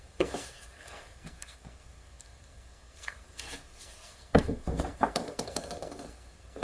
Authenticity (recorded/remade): remade